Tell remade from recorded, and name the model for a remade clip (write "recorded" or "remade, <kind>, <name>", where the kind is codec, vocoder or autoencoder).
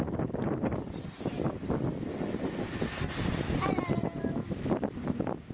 recorded